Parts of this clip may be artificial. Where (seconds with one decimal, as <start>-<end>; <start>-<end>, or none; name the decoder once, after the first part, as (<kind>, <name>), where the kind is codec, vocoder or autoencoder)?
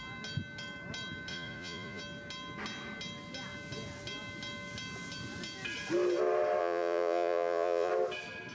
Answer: 1.3-2.0 (vocoder, Vocos); 6.6-7.9